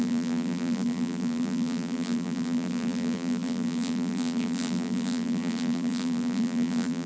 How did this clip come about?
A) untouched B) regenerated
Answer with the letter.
B